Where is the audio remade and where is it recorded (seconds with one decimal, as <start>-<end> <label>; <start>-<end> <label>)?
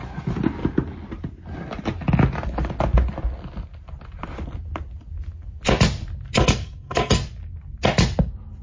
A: 0.0-6.4 recorded; 6.4-7.2 remade; 7.2-8.6 recorded